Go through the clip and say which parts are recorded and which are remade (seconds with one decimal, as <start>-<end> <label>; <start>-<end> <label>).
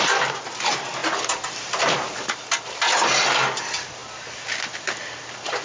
0.0-5.6 recorded